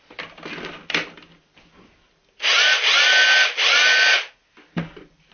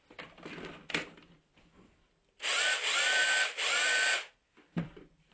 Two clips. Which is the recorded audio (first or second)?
first